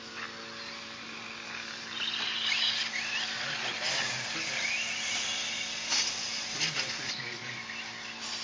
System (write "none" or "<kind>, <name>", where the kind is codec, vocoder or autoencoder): none